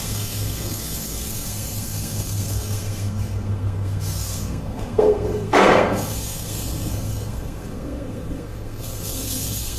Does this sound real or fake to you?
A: fake